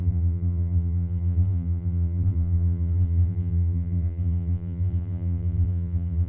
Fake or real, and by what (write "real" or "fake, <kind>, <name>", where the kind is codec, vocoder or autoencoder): fake, vocoder, BigVGAN v2